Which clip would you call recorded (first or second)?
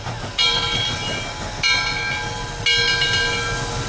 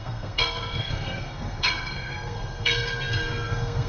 first